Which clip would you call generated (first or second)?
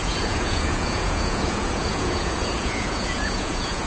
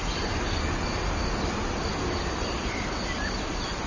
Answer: first